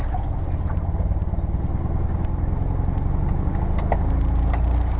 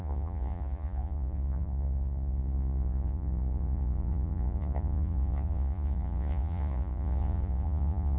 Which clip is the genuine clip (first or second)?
first